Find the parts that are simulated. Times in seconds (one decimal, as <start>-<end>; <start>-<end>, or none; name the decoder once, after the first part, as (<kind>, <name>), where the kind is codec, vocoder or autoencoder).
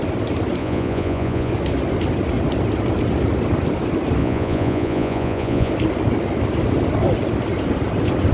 0.6-1.5 (vocoder, Vocos); 4.2-5.7